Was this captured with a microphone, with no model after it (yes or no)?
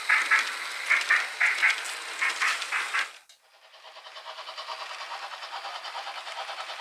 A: yes